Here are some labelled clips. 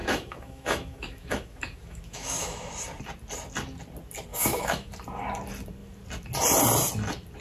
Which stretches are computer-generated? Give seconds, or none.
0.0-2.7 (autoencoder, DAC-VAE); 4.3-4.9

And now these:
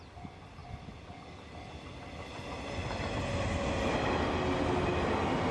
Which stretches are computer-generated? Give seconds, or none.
none

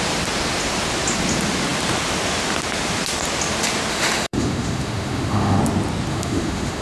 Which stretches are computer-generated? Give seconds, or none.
3.9-5.6 (autoencoder, DAC-VAE); 6.1-6.8